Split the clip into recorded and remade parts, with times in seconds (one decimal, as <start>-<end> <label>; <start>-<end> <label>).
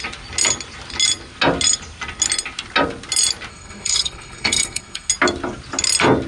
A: 0.0-3.5 recorded; 3.5-5.1 remade; 5.1-6.3 recorded